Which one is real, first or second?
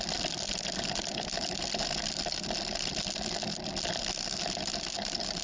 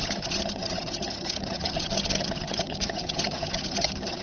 first